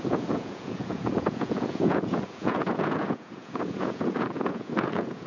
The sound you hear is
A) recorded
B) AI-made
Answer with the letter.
B